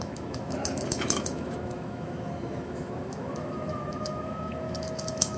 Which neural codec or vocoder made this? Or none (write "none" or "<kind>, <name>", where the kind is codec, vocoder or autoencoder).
autoencoder, DAC-VAE